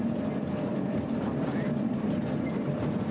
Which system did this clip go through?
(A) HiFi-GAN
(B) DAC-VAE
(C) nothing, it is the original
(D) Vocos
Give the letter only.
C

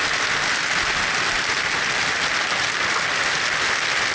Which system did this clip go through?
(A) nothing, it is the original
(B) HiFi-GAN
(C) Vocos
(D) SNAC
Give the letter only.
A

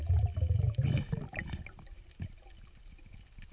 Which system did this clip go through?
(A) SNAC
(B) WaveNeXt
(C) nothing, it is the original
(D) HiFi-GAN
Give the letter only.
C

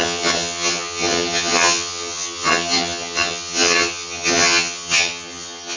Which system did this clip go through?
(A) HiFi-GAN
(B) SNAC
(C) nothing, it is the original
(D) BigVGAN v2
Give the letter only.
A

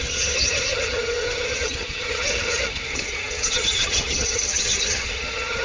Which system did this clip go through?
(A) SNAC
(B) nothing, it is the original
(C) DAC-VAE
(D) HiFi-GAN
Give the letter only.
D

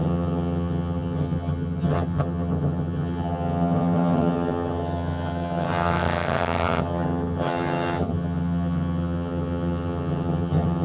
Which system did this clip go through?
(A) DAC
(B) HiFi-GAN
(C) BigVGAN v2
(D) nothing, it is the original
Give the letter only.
B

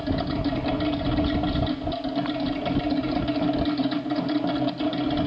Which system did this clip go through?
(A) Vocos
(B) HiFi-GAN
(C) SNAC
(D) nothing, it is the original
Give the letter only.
D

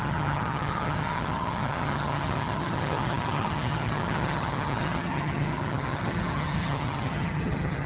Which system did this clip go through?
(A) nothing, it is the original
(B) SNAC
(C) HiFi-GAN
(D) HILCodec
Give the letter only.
C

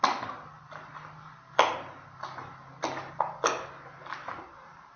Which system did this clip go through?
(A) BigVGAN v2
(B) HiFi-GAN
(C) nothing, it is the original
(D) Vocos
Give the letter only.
C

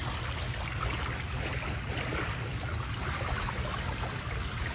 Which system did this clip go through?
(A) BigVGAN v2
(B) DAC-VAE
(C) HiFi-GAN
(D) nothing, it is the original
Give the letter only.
D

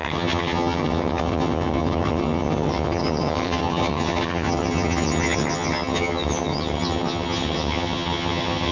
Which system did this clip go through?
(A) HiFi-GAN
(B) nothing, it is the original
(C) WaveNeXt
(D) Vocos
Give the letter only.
A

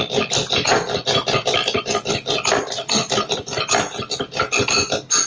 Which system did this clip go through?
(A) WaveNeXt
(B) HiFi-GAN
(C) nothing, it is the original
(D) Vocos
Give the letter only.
C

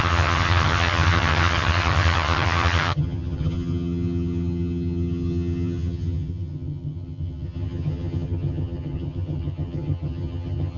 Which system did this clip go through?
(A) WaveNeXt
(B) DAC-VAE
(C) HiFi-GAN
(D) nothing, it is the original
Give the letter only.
C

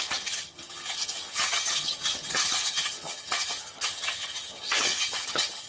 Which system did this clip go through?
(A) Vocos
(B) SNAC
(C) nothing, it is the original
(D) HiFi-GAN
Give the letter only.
D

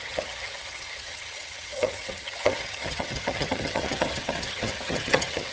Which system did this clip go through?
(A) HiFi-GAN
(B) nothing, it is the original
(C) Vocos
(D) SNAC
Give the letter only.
A